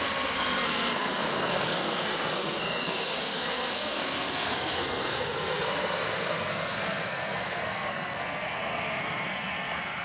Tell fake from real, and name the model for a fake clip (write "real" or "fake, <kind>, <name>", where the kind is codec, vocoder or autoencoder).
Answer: fake, codec, SNAC